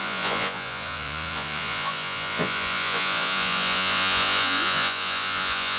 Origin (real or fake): fake